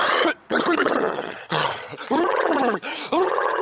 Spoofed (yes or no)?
yes